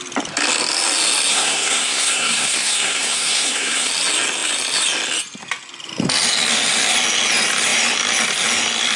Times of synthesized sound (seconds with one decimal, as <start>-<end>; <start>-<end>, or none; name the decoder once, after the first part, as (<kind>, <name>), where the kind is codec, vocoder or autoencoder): 1.3-3.9 (codec, SNAC)